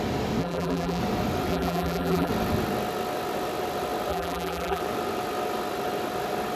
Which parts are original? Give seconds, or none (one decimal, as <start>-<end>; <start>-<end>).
0.0-0.4; 1.0-1.5; 2.3-4.1; 4.8-6.6